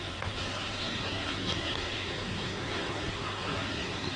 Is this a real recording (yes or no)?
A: no